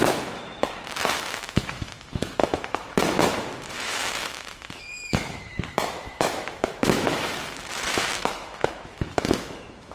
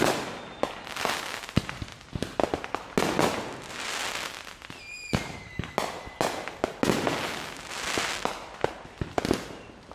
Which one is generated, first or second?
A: first